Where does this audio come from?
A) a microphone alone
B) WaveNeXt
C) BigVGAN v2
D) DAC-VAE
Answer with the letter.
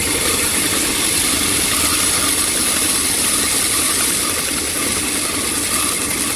A